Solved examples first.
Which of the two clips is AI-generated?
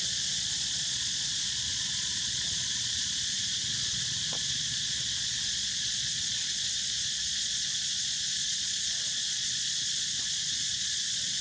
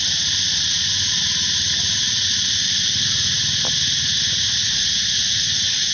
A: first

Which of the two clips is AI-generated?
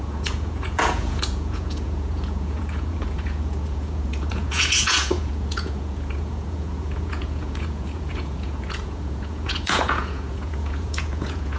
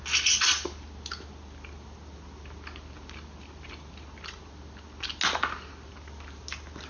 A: first